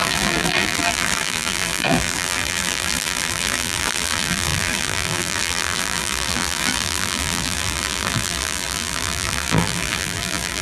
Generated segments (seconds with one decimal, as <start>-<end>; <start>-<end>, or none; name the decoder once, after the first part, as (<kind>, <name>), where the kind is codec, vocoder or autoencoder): 0.0-10.6 (vocoder, BigVGAN v2)